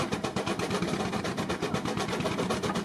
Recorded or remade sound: remade